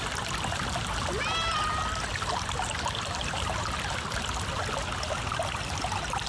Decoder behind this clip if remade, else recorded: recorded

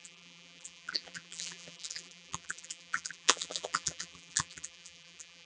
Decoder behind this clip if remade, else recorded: remade, vocoder, BigVGAN v2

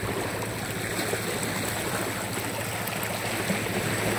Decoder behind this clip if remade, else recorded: recorded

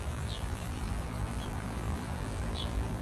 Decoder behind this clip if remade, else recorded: remade, vocoder, BigVGAN v2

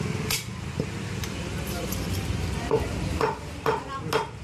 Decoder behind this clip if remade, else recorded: recorded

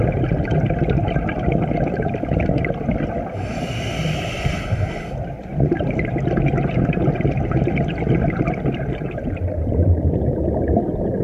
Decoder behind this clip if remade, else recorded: recorded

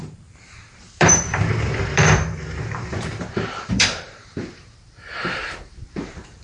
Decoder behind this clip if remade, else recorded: remade, vocoder, BigVGAN v2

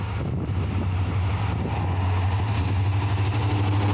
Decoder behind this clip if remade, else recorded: recorded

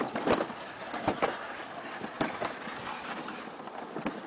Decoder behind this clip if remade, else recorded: recorded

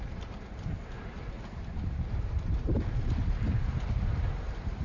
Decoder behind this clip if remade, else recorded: remade, vocoder, BigVGAN v2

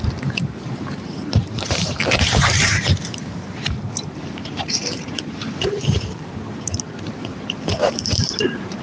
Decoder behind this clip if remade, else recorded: remade, vocoder, BigVGAN v2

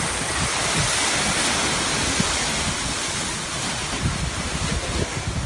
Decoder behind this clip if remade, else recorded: recorded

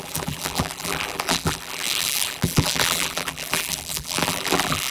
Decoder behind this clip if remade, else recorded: remade, vocoder, BigVGAN v2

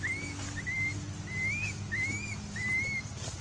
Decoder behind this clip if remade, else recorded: recorded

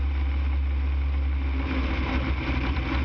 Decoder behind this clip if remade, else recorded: recorded